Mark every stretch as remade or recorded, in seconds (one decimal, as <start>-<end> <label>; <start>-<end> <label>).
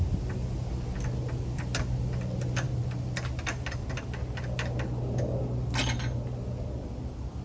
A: 0.0-7.4 recorded